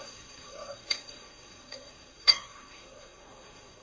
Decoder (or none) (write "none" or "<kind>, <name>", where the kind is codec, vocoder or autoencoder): codec, SNAC